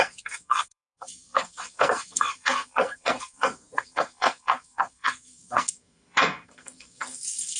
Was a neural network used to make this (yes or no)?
yes